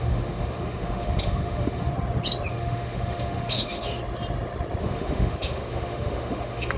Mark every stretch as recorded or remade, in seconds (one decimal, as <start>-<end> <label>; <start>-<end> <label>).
0.0-1.9 remade; 1.9-2.5 recorded; 2.5-4.0 remade; 4.0-4.8 recorded; 4.8-6.8 remade